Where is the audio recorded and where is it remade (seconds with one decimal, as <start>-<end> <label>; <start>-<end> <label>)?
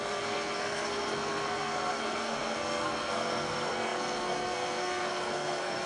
0.0-5.9 remade